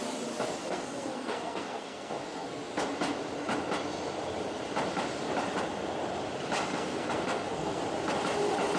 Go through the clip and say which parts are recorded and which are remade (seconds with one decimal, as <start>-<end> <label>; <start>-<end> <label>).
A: 0.0-0.6 recorded; 0.6-2.6 remade; 2.6-6.7 recorded; 6.7-7.8 remade; 7.8-8.8 recorded